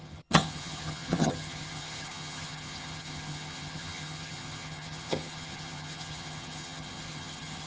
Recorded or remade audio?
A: remade